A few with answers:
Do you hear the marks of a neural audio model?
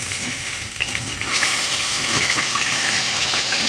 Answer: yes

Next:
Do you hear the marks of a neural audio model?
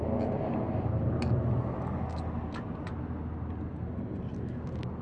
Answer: no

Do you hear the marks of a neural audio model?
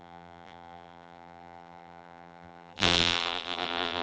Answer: yes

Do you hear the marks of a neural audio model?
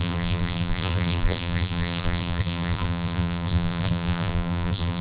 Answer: yes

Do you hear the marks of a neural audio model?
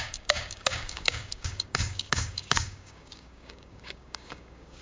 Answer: yes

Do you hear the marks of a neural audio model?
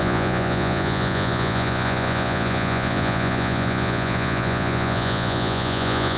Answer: yes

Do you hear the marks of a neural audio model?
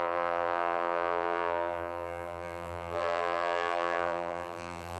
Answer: yes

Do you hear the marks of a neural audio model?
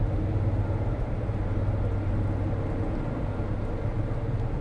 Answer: no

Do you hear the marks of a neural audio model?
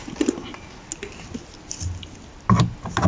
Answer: no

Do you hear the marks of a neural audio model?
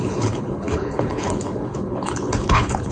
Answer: yes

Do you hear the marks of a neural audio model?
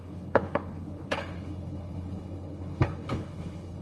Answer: yes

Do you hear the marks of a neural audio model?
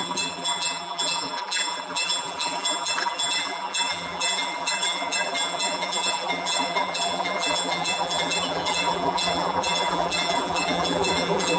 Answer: yes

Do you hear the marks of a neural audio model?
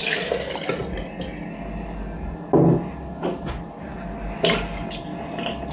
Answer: no